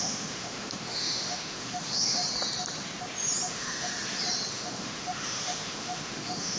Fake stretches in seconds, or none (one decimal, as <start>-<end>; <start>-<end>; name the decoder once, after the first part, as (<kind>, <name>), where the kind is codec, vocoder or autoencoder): 0.0-2.2 (autoencoder, DAC-VAE); 3.5-3.9; 4.5-6.6